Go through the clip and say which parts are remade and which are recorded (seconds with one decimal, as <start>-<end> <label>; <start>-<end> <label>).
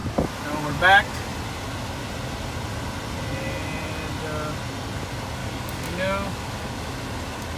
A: 0.0-5.4 recorded; 5.4-6.8 remade; 6.8-7.6 recorded